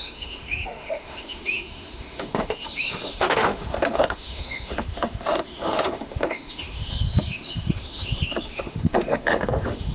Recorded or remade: remade